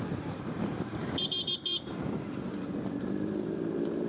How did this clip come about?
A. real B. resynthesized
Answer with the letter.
B